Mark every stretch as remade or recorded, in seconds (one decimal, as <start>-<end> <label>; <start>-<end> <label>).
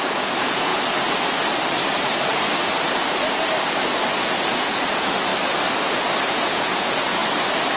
0.0-0.7 remade; 0.7-4.2 recorded; 4.2-5.3 remade; 5.3-6.3 recorded; 6.3-7.2 remade; 7.2-7.8 recorded